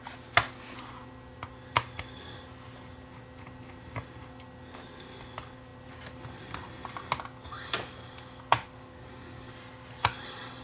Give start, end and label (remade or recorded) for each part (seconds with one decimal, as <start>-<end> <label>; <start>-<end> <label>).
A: 0.0-10.6 recorded